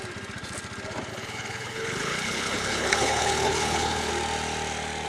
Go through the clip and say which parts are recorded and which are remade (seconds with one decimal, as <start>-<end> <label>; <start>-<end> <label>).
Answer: 0.0-1.1 recorded; 1.1-4.1 remade; 4.1-5.1 recorded